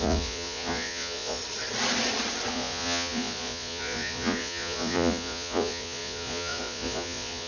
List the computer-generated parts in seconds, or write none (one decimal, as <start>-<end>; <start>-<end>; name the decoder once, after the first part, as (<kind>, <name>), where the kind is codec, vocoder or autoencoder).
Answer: 0.0-1.4 (vocoder, Vocos); 2.5-7.5